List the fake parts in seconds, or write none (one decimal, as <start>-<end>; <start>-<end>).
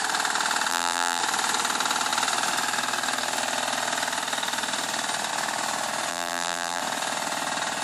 0.7-1.2; 6.1-6.8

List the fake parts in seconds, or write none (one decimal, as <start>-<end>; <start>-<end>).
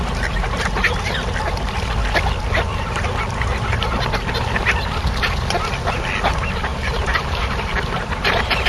2.7-4.1; 6.7-8.7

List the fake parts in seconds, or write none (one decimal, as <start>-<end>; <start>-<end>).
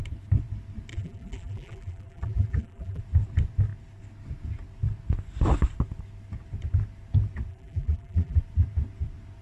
0.9-3.0; 7.5-8.4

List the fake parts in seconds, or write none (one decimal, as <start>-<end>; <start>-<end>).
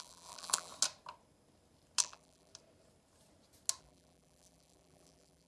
0.0-0.7; 2.0-2.5; 3.8-5.5